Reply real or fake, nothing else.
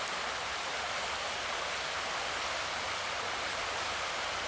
real